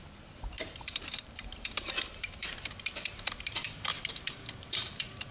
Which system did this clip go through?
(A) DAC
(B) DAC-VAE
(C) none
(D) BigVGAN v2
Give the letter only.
D